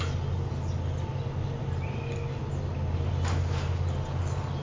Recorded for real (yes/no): yes